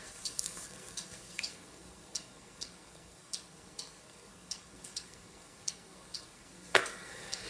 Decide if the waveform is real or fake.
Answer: fake